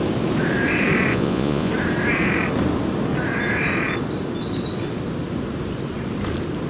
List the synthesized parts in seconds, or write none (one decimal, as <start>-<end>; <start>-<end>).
1.1-1.7